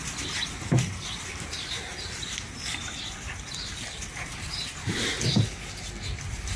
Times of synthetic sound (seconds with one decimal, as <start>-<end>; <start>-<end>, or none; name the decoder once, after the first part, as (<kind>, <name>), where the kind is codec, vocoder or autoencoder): 0.0-1.9 (vocoder, BigVGAN v2); 4.6-5.1